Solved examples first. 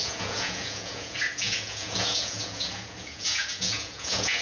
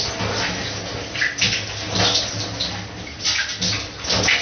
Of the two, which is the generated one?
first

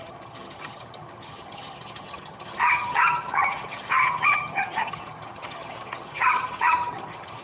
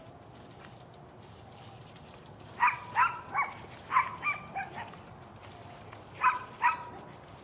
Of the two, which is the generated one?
first